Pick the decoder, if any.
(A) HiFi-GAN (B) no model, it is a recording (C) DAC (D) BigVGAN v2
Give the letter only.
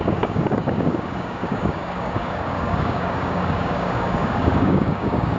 C